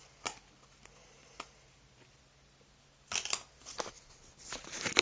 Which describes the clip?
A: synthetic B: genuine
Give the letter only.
B